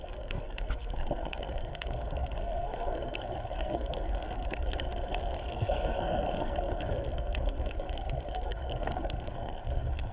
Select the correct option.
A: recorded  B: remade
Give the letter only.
B